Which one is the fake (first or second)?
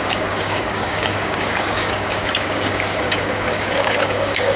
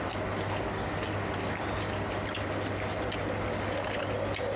first